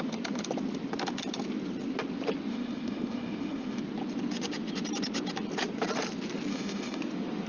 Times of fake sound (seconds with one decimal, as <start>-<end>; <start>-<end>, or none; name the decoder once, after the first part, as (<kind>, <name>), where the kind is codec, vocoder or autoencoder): 2.5-3.8 (autoencoder, DAC-VAE); 6.5-7.0